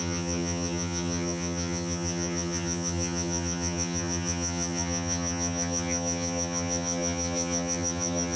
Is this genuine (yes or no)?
no